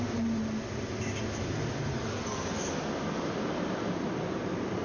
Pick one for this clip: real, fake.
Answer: real